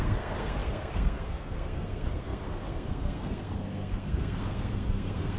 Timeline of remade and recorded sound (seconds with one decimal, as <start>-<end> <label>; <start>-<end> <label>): 0.0-5.4 remade